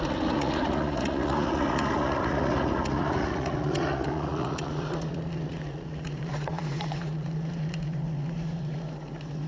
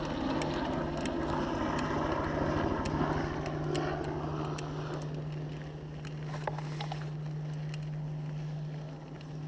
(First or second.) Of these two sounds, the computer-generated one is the first